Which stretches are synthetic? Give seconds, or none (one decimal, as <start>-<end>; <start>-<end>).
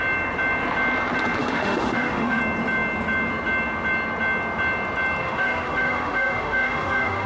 1.4-2.4; 5.2-7.3